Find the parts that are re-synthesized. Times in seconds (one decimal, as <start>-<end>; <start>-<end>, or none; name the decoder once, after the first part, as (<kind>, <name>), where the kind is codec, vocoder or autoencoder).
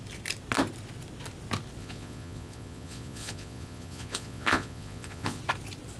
1.8-5.4 (vocoder, Vocos)